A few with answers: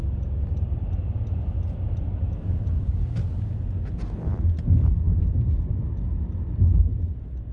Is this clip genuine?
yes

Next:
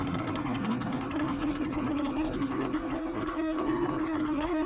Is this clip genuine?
no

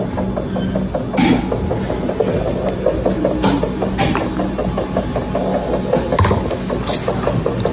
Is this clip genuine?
yes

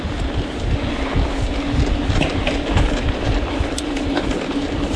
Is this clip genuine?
yes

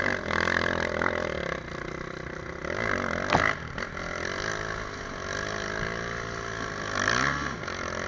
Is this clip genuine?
yes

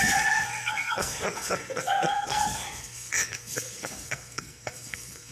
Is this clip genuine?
no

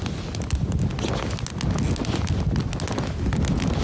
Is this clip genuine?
yes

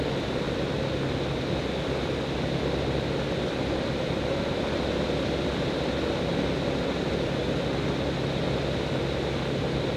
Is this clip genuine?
yes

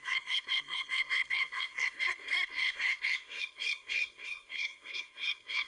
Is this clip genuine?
no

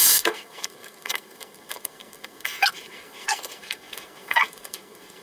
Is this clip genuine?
no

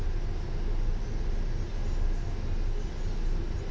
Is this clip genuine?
yes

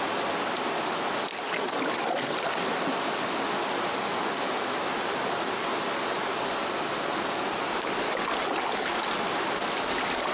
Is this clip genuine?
yes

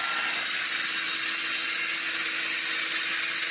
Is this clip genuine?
yes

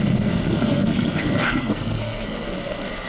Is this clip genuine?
no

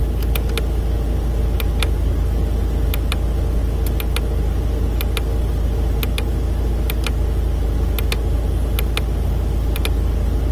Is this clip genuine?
yes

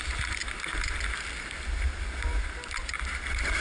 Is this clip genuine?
yes